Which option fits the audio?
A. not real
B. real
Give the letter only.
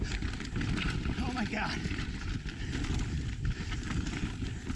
B